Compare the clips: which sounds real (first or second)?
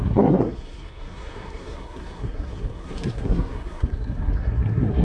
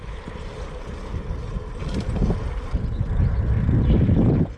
second